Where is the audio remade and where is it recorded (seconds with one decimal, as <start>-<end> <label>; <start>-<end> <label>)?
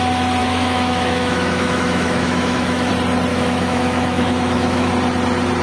0.0-0.4 recorded; 0.4-2.9 remade; 2.9-3.3 recorded; 3.3-4.9 remade; 4.9-5.6 recorded